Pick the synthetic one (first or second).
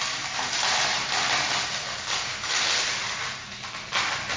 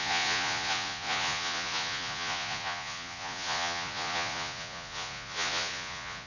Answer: second